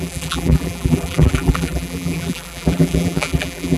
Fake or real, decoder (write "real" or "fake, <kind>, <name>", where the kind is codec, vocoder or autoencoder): fake, vocoder, BigVGAN v2